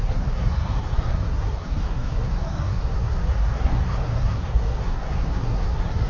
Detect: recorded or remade remade